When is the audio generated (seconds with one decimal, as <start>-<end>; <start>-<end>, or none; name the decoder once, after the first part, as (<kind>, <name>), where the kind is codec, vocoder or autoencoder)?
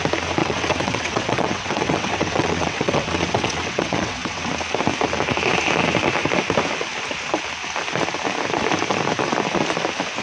0.4-4.5 (vocoder, WaveNeXt)